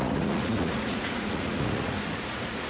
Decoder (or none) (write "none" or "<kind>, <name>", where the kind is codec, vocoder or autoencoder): vocoder, Vocos